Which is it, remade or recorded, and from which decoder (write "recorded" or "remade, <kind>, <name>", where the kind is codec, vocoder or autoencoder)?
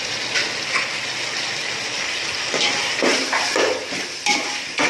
recorded